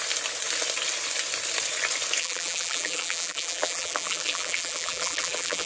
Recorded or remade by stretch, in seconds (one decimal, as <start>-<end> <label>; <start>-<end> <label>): 0.0-2.2 recorded; 2.2-5.7 remade